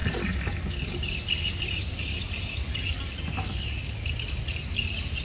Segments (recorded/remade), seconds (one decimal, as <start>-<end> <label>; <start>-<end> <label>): 0.0-5.2 recorded